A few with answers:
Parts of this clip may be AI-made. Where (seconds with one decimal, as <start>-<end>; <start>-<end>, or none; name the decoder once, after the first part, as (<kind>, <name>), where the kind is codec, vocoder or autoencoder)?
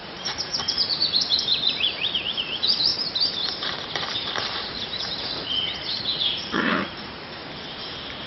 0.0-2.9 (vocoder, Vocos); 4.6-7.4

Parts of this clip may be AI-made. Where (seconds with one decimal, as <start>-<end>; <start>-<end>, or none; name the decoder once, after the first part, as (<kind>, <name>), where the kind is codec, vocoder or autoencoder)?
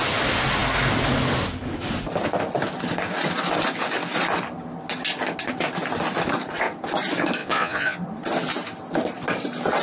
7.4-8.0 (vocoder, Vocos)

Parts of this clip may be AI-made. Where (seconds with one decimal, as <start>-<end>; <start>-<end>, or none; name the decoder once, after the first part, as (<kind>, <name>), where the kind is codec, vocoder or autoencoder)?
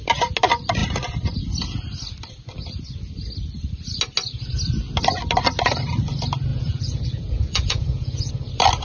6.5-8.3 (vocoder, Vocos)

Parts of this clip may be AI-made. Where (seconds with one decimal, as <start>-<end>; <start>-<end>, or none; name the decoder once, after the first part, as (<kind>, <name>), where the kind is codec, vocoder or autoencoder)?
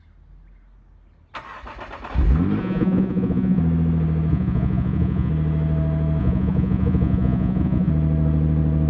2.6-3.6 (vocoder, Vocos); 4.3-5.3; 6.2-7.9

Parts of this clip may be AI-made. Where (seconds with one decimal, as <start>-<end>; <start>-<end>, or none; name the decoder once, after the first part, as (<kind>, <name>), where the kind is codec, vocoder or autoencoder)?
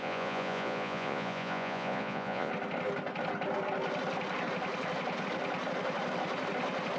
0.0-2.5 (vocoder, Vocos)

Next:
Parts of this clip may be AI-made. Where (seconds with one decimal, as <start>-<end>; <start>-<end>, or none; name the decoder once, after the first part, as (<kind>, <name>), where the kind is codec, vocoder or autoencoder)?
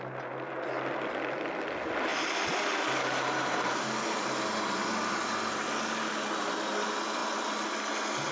none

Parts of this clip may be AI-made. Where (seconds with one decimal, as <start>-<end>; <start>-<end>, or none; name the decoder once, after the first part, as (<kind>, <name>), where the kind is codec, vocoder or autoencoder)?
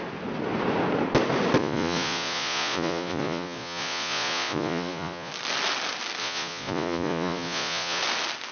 1.6-5.3 (vocoder, Vocos); 6.2-8.0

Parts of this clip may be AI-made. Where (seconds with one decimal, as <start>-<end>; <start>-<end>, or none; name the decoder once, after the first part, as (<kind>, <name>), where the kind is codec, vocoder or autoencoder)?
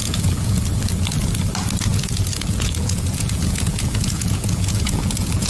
0.0-0.6 (vocoder, Vocos); 1.9-5.5